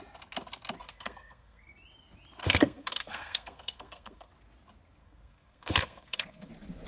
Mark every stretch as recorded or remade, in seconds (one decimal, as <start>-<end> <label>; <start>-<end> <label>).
0.0-0.8 recorded; 0.8-1.7 remade; 1.7-2.4 recorded; 2.4-4.3 remade; 4.3-5.0 recorded; 5.0-6.5 remade; 6.5-6.9 recorded

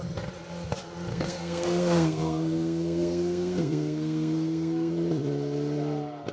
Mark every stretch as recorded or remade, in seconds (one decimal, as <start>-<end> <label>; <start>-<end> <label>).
0.0-1.1 recorded; 1.1-4.9 remade; 4.9-6.3 recorded

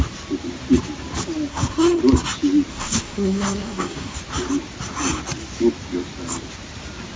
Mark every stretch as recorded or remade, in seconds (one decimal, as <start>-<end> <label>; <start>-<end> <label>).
0.0-1.5 recorded; 1.5-2.0 remade; 2.0-2.7 recorded; 2.7-4.2 remade; 4.2-7.2 recorded

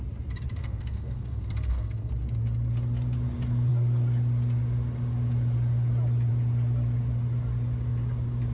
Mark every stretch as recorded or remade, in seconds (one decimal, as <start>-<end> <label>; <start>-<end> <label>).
0.0-0.6 recorded; 0.6-2.1 remade; 2.1-8.5 recorded

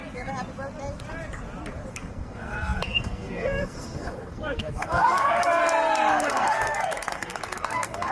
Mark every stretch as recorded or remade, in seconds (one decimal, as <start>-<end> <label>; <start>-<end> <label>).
0.0-1.9 recorded; 1.9-5.6 remade; 5.6-6.1 recorded; 6.1-8.1 remade

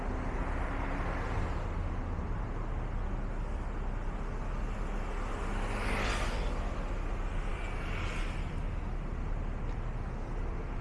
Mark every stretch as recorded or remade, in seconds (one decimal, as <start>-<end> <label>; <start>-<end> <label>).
0.0-10.8 recorded

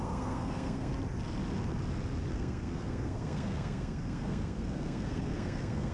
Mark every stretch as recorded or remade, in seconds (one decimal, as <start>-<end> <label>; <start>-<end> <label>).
0.0-0.9 remade; 0.9-2.3 recorded; 2.3-5.9 remade

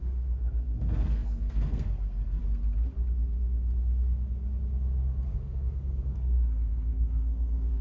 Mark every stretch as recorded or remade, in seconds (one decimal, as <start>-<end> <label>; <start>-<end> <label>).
0.0-2.4 remade; 2.4-5.3 recorded; 5.3-7.8 remade